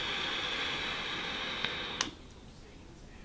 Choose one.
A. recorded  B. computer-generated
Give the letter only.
A